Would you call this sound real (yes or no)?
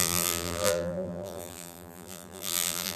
no